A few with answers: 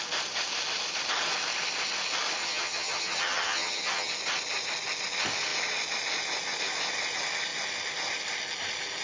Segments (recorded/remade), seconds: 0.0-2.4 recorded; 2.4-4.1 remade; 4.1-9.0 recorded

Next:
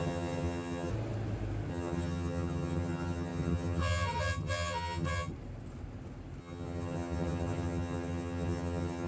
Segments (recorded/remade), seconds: 0.0-0.9 remade; 0.9-1.7 recorded; 1.7-5.3 remade; 5.3-6.4 recorded; 6.4-9.1 remade

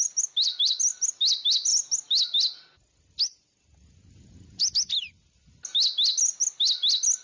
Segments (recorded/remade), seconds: 0.0-7.2 recorded

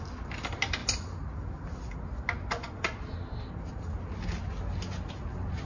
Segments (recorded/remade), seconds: 0.0-5.7 recorded

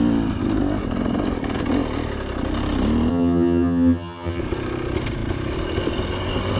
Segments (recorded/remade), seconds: 0.0-3.1 recorded; 3.1-4.4 remade; 4.4-6.6 recorded

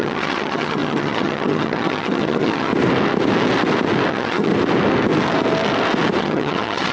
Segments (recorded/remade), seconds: 0.0-2.7 remade; 2.7-4.1 recorded; 4.1-4.5 remade; 4.5-6.2 recorded; 6.2-6.9 remade

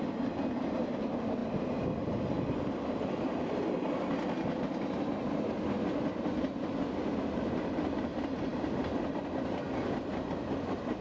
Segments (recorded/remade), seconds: 0.0-11.0 recorded

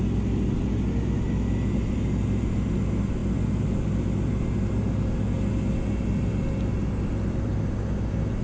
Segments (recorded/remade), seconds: 0.0-8.4 recorded